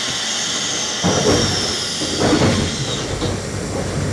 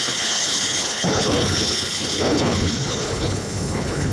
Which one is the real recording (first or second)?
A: first